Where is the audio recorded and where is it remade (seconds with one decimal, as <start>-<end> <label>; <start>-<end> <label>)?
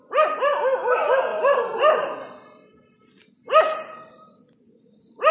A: 0.0-1.3 recorded; 1.3-2.0 remade; 2.0-5.3 recorded